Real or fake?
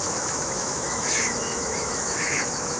fake